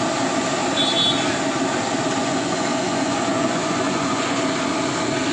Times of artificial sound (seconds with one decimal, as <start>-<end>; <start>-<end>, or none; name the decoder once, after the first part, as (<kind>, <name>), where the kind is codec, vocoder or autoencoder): 2.2-4.5 (vocoder, Vocos)